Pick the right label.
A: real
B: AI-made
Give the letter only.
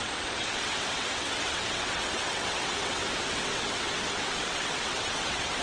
B